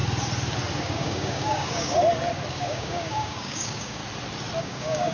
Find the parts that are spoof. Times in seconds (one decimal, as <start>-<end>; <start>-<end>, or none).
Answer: 0.8-2.0; 2.5-4.0; 4.6-5.1